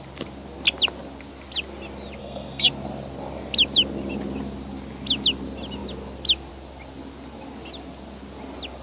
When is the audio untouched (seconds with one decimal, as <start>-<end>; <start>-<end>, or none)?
0.0-2.2; 2.7-8.8